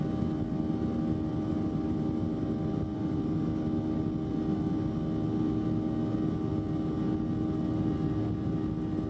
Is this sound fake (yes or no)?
no